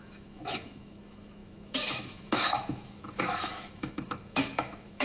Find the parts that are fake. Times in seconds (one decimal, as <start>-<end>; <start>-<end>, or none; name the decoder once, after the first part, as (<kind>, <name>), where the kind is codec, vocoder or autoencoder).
0.0-5.0 (autoencoder, DAC-VAE)